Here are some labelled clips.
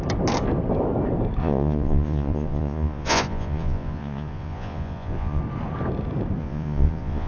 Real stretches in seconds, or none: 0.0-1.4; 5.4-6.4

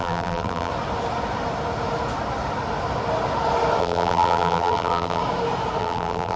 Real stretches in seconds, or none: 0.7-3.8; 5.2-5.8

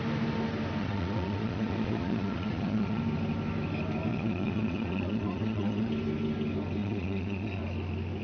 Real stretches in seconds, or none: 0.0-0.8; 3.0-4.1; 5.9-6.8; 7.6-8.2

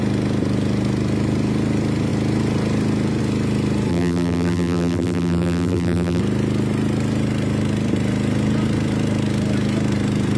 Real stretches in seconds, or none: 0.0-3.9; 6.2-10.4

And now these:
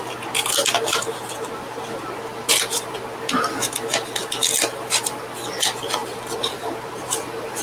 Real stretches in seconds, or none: 0.0-2.3; 2.9-6.0

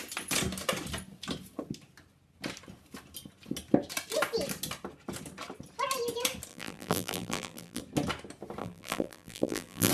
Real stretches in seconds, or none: 0.0-6.5; 7.8-8.6

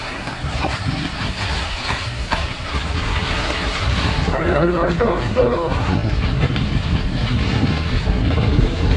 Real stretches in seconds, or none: none

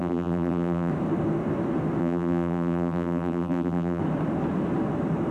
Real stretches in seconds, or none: 0.9-2.0; 4.0-5.3